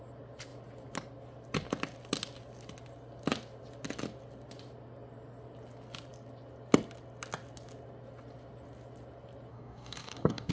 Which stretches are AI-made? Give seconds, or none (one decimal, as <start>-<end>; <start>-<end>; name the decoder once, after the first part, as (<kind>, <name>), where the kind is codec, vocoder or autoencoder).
9.5-10.5 (codec, DAC)